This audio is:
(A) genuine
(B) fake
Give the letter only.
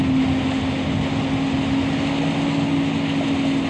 A